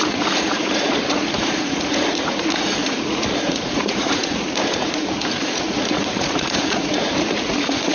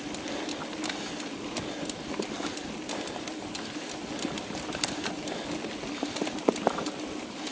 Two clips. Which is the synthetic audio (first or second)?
first